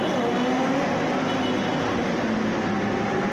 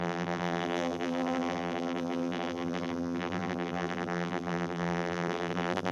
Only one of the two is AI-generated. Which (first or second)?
second